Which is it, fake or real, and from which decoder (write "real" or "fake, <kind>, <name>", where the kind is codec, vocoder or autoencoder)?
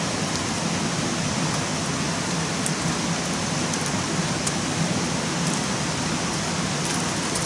real